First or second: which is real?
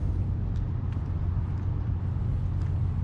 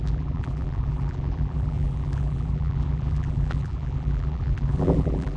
first